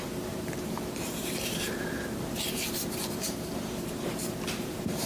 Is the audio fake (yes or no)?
yes